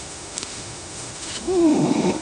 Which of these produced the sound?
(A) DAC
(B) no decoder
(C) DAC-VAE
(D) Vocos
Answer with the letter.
C